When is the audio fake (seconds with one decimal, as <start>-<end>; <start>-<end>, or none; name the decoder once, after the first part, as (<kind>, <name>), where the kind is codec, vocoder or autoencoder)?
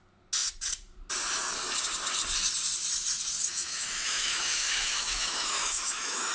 3.4-6.3 (autoencoder, DAC-VAE)